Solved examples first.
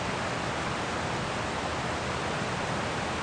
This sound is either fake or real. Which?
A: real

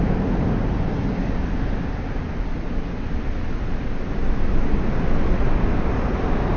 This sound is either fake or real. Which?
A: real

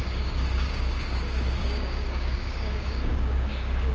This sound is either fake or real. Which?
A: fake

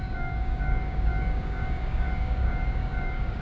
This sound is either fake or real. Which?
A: fake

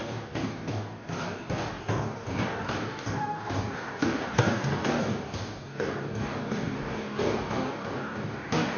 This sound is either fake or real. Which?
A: fake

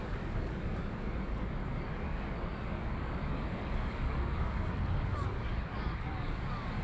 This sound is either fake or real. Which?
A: fake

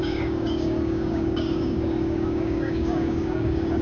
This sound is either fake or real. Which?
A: fake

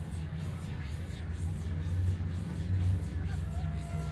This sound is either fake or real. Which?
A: fake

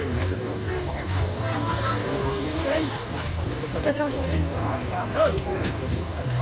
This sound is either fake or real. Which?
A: fake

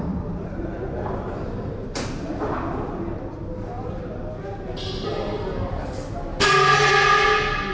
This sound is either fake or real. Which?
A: real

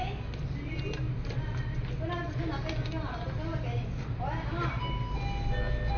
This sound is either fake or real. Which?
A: real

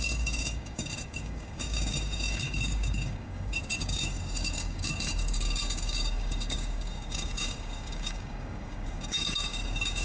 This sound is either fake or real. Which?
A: fake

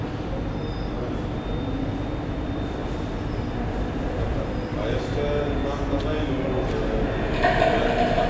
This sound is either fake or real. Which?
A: real